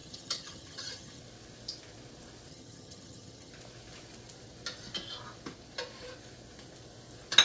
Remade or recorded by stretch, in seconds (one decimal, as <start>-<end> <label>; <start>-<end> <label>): 0.0-1.2 remade; 1.2-2.5 recorded; 2.5-3.5 remade; 3.5-7.4 recorded